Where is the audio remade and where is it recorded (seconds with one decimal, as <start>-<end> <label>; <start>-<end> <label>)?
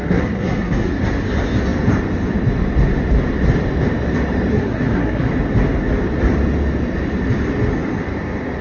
0.0-1.0 remade; 1.0-4.5 recorded; 4.5-5.3 remade; 5.3-8.6 recorded